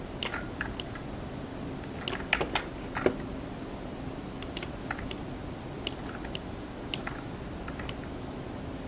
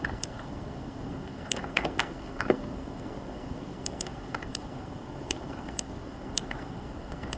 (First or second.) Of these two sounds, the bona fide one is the first